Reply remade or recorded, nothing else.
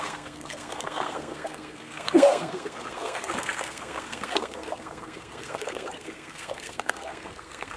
remade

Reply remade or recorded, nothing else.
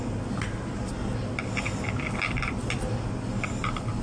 recorded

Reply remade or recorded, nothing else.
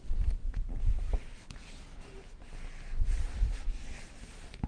recorded